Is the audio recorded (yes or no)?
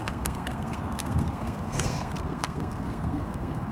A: no